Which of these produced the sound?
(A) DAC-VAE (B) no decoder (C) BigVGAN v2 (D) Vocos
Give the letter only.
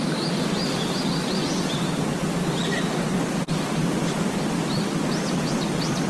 C